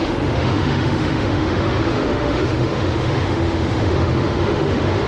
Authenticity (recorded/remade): remade